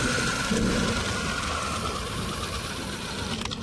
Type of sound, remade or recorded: recorded